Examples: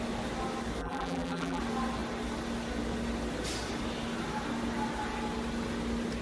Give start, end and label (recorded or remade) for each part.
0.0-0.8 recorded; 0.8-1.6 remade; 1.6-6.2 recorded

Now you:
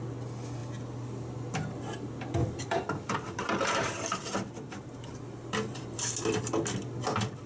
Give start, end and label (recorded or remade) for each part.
0.0-2.4 recorded; 2.4-6.4 remade; 6.4-7.5 recorded

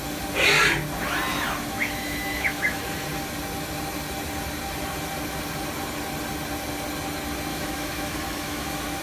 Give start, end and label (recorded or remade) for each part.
0.0-1.3 recorded; 1.3-2.8 remade; 2.8-7.5 recorded; 7.5-9.0 remade

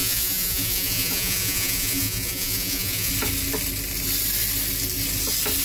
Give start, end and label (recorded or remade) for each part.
0.0-3.1 remade; 3.1-5.6 recorded

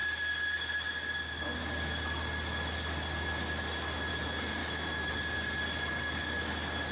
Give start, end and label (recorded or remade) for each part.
0.0-4.6 recorded; 4.6-5.1 remade; 5.1-6.9 recorded

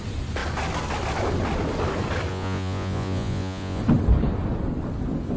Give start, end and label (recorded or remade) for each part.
0.0-2.3 recorded; 2.3-3.8 remade; 3.8-5.4 recorded

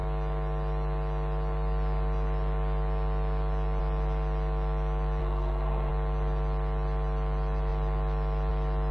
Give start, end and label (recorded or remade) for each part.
0.0-5.2 recorded; 5.2-5.9 remade; 5.9-8.9 recorded

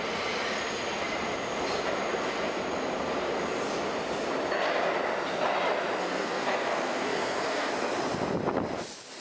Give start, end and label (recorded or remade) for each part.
0.0-6.0 recorded; 6.0-7.7 remade; 7.7-9.2 recorded